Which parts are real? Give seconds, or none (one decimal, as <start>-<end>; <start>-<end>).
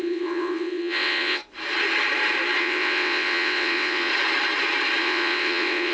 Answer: 1.4-2.6; 4.1-5.0